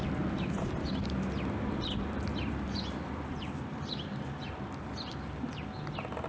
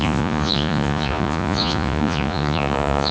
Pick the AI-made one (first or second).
second